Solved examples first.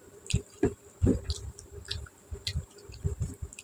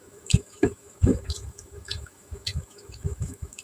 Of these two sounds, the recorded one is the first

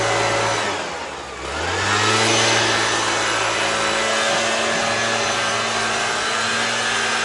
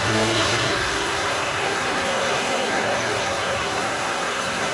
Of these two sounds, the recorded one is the first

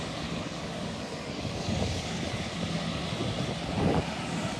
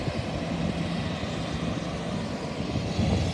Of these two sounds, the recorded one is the second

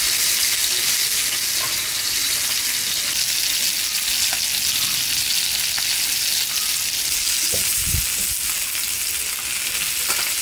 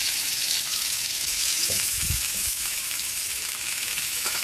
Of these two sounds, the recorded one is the first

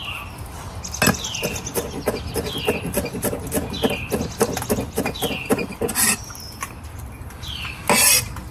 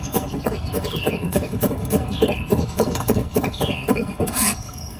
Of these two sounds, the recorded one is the first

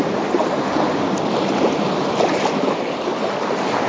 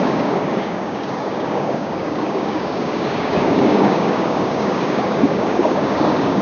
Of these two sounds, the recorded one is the first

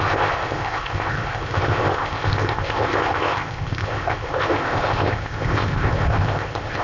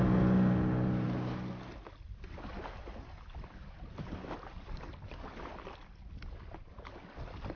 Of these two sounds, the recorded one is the second